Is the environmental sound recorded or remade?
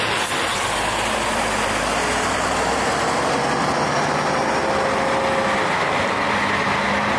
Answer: recorded